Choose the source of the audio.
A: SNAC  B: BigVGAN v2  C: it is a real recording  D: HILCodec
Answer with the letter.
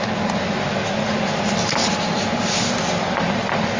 C